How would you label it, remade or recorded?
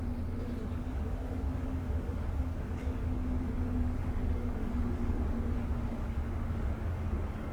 remade